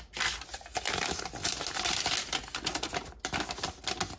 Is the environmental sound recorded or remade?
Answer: recorded